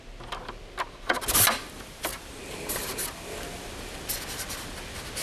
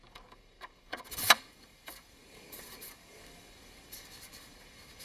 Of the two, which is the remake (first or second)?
second